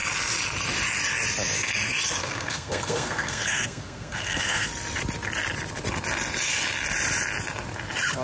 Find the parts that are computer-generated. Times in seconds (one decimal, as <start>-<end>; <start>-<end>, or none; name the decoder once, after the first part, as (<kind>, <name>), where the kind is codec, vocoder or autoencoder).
2.2-4.7 (codec, SNAC)